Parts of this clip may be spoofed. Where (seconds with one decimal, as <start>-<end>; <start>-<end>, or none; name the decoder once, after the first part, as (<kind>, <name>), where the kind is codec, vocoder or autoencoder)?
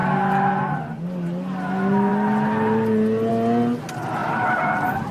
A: 4.2-5.1 (vocoder, BigVGAN v2)